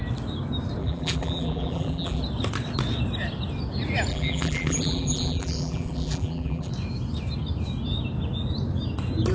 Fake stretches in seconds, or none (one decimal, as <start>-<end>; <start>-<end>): 0.8-2.2; 4.1-6.7